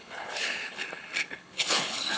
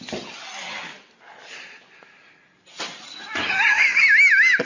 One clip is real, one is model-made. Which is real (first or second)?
second